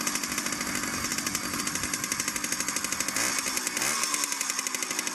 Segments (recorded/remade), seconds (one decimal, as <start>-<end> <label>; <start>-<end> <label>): 0.0-5.1 recorded

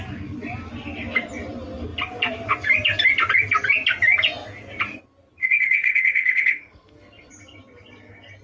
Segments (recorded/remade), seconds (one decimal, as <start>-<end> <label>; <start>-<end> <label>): 0.0-5.4 recorded; 5.4-7.3 remade; 7.3-8.4 recorded

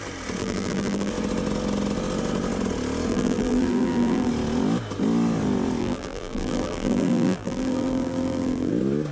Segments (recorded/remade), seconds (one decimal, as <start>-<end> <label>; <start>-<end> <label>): 0.0-0.4 recorded; 0.4-1.1 remade; 1.1-3.1 recorded; 3.1-4.3 remade; 4.3-5.8 recorded; 5.8-8.7 remade; 8.7-9.1 recorded

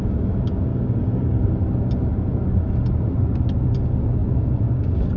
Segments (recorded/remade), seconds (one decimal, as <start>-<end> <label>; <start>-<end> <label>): 0.0-0.7 recorded; 0.7-1.5 remade; 1.5-5.2 recorded

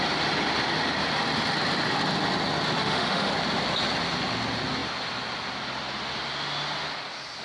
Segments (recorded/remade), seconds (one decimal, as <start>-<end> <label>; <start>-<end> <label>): 0.0-2.8 recorded; 2.8-3.3 remade; 3.3-7.4 recorded

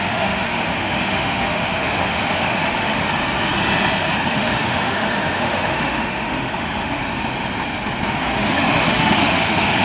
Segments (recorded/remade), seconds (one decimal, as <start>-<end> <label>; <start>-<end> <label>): 0.0-3.0 remade; 3.0-4.3 recorded; 4.3-7.0 remade; 7.0-8.1 recorded; 8.1-9.8 remade

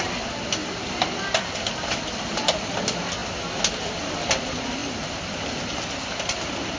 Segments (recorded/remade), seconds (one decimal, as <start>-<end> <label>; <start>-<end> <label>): 0.0-0.6 recorded; 0.6-2.7 remade; 2.7-6.8 recorded